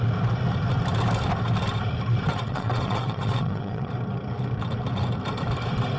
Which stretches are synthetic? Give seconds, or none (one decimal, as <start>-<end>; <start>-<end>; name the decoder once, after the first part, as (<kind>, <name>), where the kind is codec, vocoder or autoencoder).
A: 2.3-3.9 (vocoder, WaveNeXt)

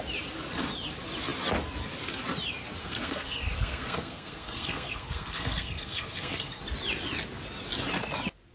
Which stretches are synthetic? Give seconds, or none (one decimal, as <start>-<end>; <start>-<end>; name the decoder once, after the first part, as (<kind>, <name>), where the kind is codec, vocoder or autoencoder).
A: 2.8-6.6 (codec, SNAC)

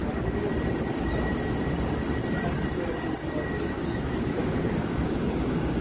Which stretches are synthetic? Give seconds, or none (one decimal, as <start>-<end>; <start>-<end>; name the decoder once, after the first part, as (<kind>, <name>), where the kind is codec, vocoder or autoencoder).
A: 3.5-5.8 (codec, DAC)

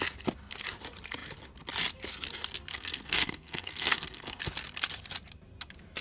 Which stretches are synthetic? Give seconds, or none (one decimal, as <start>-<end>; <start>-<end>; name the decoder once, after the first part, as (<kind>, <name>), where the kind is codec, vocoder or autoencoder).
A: 2.7-4.4 (codec, SNAC)

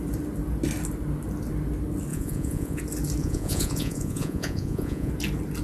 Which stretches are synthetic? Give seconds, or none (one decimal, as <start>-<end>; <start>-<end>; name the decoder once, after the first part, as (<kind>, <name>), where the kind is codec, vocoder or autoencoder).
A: 2.1-2.8 (vocoder, Vocos); 3.2-5.1

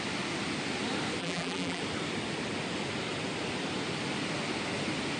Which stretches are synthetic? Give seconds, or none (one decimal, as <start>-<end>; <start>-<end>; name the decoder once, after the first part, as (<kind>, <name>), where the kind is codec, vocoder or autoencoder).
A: 1.2-1.8 (vocoder, BigVGAN v2)